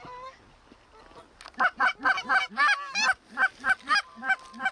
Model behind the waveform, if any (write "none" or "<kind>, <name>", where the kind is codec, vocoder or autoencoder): none